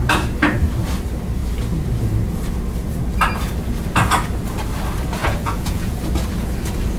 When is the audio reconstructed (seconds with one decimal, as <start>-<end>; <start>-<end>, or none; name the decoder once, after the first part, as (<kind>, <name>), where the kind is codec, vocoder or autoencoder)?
5.2-6.0 (vocoder, Vocos)